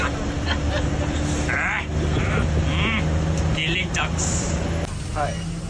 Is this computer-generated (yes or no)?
no